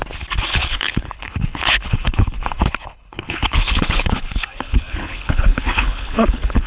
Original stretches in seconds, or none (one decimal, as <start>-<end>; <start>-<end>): 0.0-0.5